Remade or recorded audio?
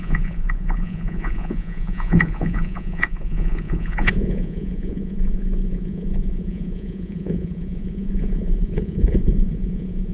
remade